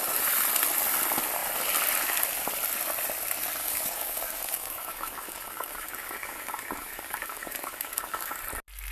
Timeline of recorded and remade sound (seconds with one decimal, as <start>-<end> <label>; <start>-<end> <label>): 0.0-3.6 recorded; 3.6-8.4 remade; 8.4-8.9 recorded

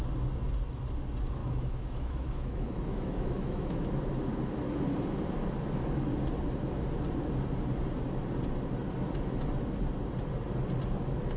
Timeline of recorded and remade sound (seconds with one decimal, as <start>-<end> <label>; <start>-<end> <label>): 0.0-1.4 recorded; 1.4-3.9 remade; 3.9-11.4 recorded

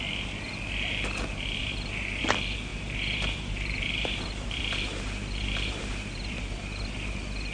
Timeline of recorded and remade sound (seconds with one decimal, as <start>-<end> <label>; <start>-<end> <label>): 0.0-1.6 recorded; 1.6-2.2 remade; 2.2-2.7 recorded; 2.7-6.9 remade; 6.9-7.5 recorded

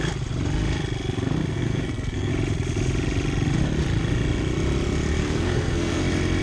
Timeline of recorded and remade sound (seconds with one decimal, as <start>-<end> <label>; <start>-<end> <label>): 0.0-1.5 recorded; 1.5-2.3 remade; 2.3-5.2 recorded; 5.2-6.0 remade; 6.0-6.4 recorded

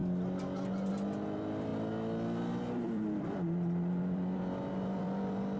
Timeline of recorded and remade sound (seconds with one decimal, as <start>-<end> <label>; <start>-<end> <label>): 0.0-0.9 recorded; 0.9-1.7 remade; 1.7-2.6 recorded; 2.6-5.6 remade

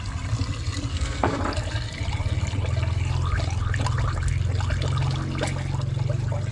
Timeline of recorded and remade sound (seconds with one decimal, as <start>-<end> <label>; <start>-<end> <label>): 0.0-0.9 recorded; 0.9-1.4 remade; 1.4-6.5 recorded

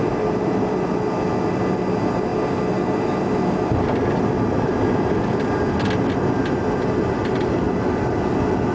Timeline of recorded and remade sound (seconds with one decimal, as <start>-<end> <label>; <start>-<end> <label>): 0.0-8.7 recorded